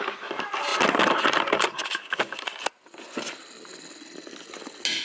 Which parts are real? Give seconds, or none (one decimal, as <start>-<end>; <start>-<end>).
0.0-5.0